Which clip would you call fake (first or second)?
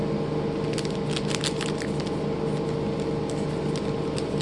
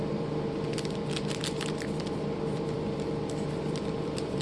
second